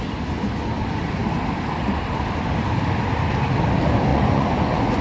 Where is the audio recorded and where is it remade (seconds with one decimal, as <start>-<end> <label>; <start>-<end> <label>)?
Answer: 0.0-4.1 recorded; 4.1-5.0 remade